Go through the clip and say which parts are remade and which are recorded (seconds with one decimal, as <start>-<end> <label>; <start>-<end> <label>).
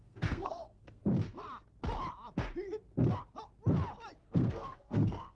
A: 0.0-1.0 remade; 1.0-4.2 recorded; 4.2-5.3 remade